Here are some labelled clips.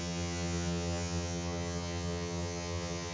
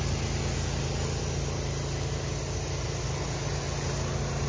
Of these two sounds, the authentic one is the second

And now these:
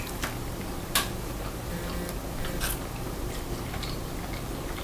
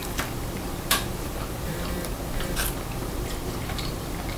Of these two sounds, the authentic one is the first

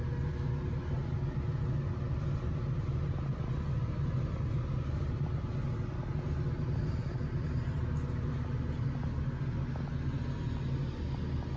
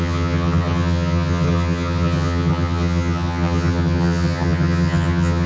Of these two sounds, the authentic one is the first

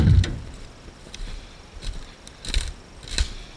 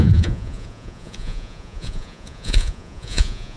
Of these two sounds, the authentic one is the first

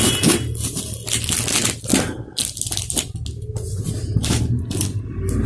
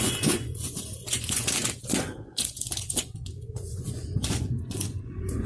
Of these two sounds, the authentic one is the first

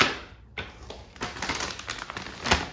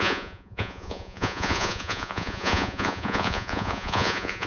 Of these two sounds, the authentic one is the first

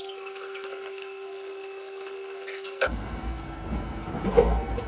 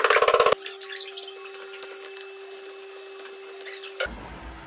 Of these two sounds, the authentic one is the second